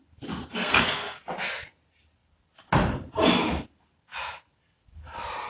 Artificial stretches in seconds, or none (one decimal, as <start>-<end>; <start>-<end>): 0.5-1.2